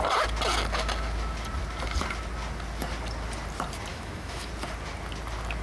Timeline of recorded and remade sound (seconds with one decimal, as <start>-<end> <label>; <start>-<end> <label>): 0.0-3.9 recorded; 3.9-4.5 remade; 4.5-5.6 recorded